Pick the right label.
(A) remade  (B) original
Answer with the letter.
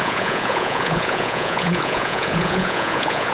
A